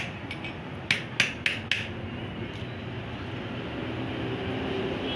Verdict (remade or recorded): recorded